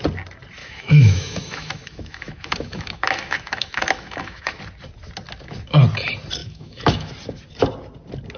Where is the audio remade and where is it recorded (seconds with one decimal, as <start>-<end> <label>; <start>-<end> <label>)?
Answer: 0.0-0.6 recorded; 0.6-4.6 remade; 4.6-6.4 recorded; 6.4-7.1 remade; 7.1-8.4 recorded